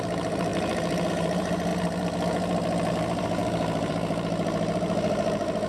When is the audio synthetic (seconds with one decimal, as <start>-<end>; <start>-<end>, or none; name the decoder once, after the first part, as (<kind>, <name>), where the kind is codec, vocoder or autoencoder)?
0.0-1.7 (vocoder, BigVGAN v2); 2.9-5.7